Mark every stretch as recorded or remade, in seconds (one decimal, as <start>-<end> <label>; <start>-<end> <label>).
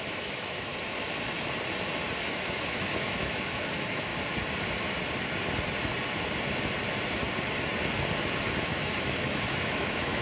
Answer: 0.0-0.7 remade; 0.7-2.3 recorded; 2.3-4.1 remade; 4.1-8.6 recorded; 8.6-10.2 remade